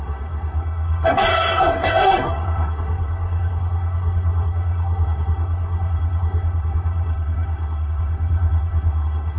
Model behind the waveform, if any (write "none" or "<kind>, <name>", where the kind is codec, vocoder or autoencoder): codec, SNAC